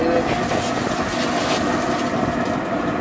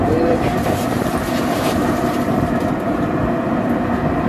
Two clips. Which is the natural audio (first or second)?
first